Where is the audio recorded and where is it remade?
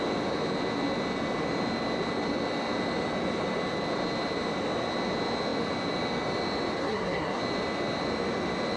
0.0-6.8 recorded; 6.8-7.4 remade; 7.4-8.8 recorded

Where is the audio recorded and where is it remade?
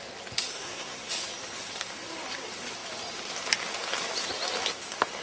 0.0-0.5 recorded; 0.5-1.1 remade; 1.1-5.2 recorded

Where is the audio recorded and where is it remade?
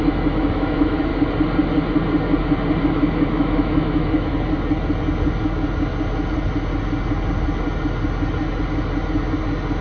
0.0-1.1 remade; 1.1-2.8 recorded; 2.8-4.3 remade; 4.3-9.8 recorded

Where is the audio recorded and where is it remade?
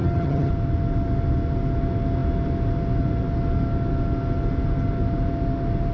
0.0-0.5 remade; 0.5-5.9 recorded